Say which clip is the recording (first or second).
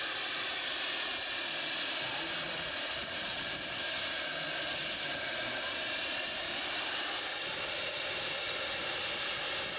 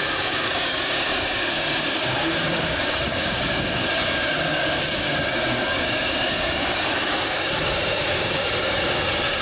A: first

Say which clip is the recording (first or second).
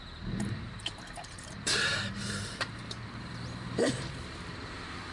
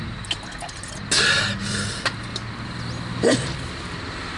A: second